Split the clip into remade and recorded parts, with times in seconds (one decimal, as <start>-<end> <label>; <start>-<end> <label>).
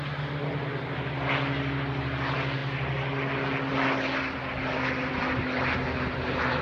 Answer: 0.0-6.6 recorded